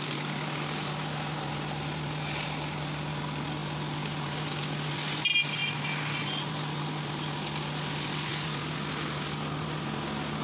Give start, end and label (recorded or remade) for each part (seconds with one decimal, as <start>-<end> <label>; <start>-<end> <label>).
0.0-10.4 recorded

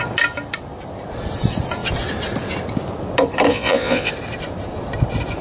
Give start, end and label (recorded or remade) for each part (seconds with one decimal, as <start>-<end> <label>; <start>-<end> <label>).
0.0-3.5 recorded; 3.5-4.1 remade; 4.1-5.4 recorded

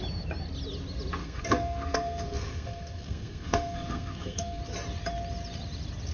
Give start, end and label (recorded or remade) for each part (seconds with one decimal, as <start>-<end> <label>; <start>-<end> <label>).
0.0-1.2 recorded; 1.2-4.6 remade; 4.6-6.1 recorded

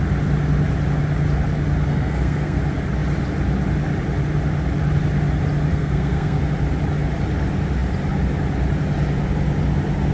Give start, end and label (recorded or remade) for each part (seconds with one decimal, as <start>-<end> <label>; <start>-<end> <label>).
0.0-1.9 recorded; 1.9-2.6 remade; 2.6-5.7 recorded; 5.7-6.4 remade; 6.4-10.1 recorded

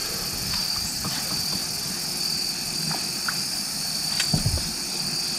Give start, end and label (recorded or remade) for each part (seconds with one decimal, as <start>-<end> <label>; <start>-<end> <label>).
0.0-5.4 recorded

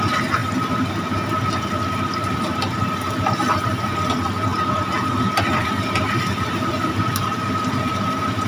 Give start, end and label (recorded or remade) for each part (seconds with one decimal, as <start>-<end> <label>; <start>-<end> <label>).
0.0-8.5 recorded